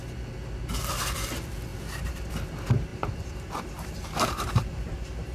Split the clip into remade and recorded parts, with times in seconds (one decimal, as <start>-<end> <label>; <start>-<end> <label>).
0.0-1.7 recorded; 1.7-2.3 remade; 2.3-2.9 recorded; 2.9-5.3 remade